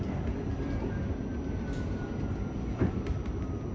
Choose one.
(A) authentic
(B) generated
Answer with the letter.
A